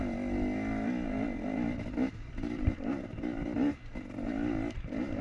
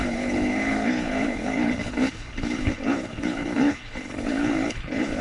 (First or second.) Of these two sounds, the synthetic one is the second